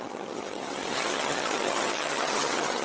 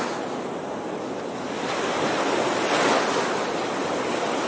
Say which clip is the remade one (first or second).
first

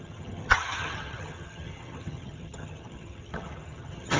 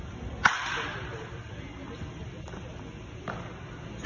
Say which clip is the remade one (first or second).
first